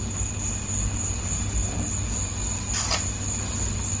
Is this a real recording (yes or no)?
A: yes